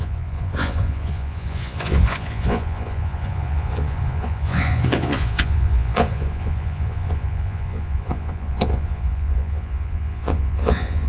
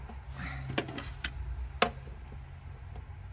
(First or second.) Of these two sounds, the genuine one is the second